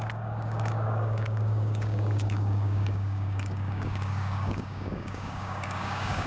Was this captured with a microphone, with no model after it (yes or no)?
no